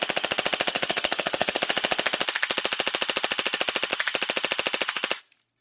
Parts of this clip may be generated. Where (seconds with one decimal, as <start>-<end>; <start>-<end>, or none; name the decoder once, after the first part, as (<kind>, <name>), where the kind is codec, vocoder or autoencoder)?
0.7-1.6 (codec, HILCodec)